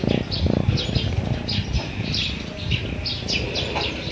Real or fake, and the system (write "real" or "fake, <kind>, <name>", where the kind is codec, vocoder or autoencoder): real